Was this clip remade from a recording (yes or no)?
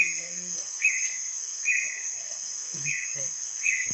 yes